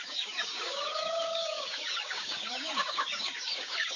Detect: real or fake fake